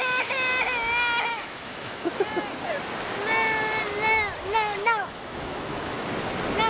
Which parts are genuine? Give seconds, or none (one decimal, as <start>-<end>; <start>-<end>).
0.0-1.3; 2.1-4.8; 6.1-6.7